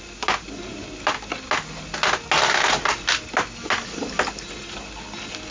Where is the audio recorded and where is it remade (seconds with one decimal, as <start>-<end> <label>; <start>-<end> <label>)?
0.0-5.5 recorded